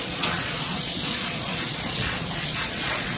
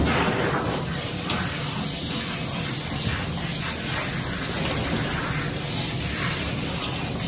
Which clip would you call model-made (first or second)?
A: first